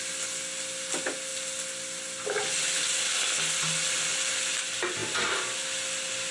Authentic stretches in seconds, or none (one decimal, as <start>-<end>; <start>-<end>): 0.0-6.3

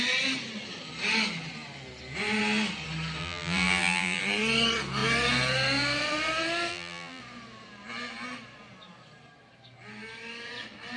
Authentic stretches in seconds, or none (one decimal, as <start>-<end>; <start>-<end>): 0.0-3.2; 4.2-6.7; 7.2-11.0